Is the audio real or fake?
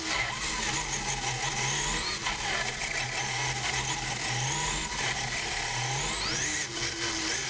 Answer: real